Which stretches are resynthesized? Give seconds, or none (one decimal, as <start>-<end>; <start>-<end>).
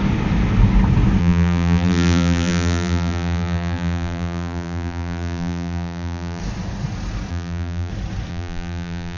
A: 1.2-6.4; 7.3-7.9; 8.3-9.2